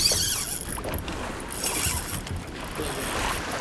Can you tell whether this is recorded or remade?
recorded